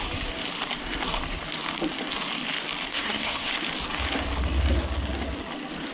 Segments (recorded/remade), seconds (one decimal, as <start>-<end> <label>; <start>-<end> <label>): 0.0-2.9 recorded; 2.9-3.5 remade; 3.5-5.9 recorded